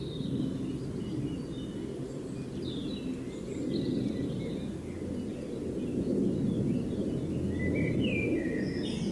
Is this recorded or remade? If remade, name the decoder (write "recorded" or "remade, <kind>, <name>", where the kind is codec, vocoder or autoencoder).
recorded